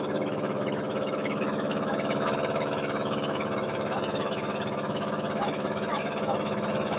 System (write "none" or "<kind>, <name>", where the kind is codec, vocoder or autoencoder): autoencoder, DAC-VAE